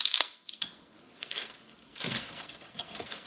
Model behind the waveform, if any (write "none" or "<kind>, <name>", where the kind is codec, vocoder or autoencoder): codec, SNAC